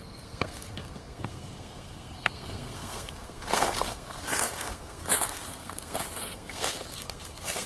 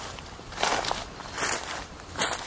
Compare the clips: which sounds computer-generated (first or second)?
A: first